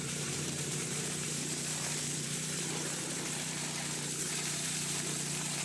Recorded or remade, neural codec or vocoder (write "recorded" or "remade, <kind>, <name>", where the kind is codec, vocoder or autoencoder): remade, vocoder, BigVGAN v2